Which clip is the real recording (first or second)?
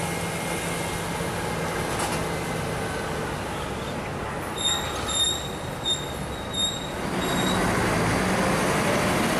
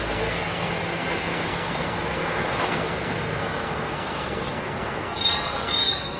first